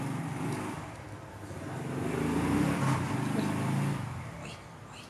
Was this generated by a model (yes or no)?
no